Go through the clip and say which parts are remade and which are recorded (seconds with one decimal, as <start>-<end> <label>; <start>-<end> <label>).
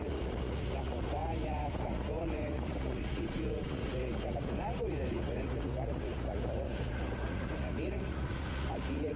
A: 0.0-9.2 remade